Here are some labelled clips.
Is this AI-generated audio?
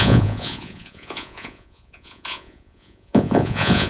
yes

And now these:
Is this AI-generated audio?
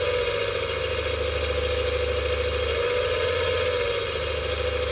no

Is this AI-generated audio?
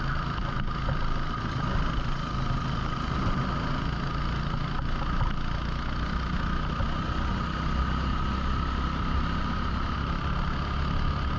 no